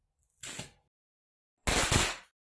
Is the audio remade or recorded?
recorded